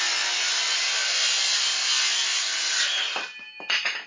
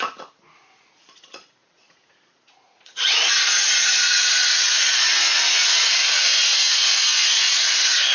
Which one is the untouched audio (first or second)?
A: first